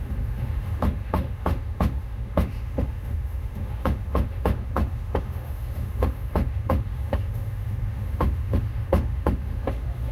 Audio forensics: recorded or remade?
remade